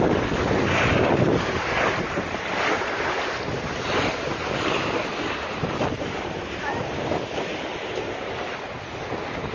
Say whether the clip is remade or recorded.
recorded